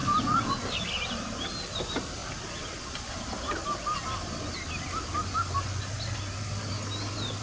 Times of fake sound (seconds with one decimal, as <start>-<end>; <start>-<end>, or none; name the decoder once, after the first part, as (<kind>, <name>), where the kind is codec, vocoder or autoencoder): none